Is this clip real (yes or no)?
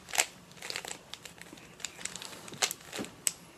yes